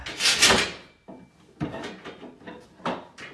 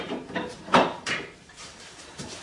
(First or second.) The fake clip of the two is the second